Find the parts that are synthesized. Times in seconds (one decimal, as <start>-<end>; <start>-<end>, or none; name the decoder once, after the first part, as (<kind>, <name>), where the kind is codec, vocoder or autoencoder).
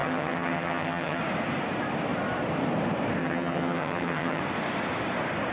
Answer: 0.0-1.2 (vocoder, HiFi-GAN); 3.2-4.4